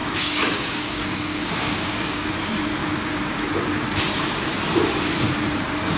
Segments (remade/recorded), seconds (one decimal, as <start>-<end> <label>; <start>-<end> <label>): 0.0-2.3 remade; 2.3-2.8 recorded; 2.8-3.5 remade; 3.5-6.0 recorded